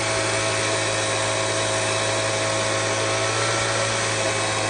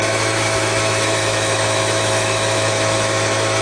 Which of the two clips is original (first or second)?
first